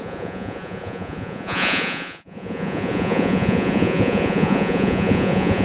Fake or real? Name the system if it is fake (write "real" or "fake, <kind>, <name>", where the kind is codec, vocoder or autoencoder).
fake, vocoder, Vocos